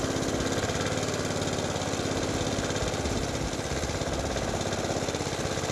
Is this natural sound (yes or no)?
yes